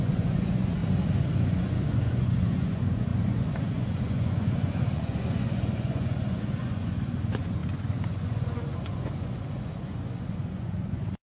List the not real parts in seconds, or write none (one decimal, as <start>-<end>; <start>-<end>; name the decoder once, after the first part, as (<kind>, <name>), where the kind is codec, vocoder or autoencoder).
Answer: 0.0-0.8 (vocoder, Vocos); 1.4-11.3